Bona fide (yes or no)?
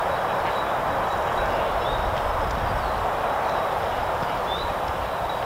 yes